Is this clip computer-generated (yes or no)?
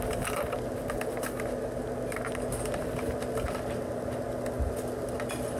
no